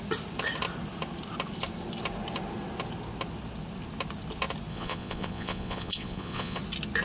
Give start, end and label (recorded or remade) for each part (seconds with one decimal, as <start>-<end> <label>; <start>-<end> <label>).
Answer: 0.0-4.7 recorded; 4.7-6.6 remade; 6.6-7.0 recorded